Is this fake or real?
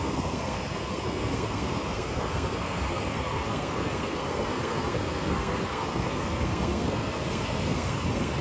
fake